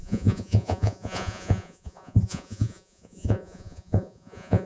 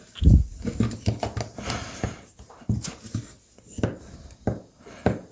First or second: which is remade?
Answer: first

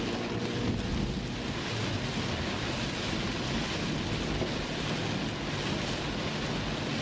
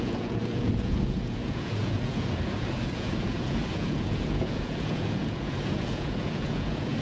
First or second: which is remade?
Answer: second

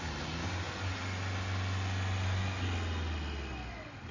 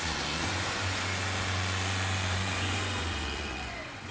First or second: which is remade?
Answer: second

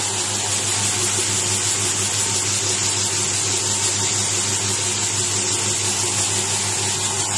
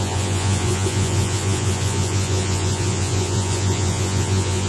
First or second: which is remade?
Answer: second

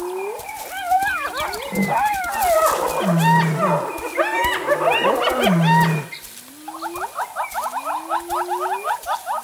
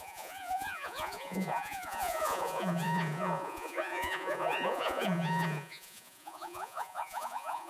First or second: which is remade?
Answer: second